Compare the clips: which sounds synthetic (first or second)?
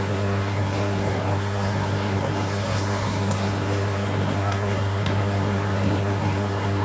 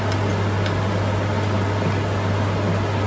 first